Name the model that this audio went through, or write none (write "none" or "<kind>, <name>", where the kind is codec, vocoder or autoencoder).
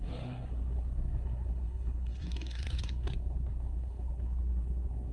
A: codec, SNAC